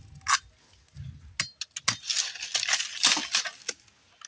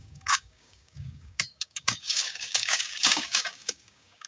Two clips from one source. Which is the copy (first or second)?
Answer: second